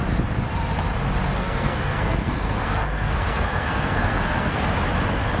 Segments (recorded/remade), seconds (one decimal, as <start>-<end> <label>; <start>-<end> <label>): 0.0-1.4 recorded; 1.4-4.6 remade; 4.6-5.4 recorded